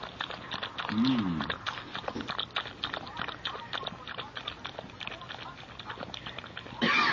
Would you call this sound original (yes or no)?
yes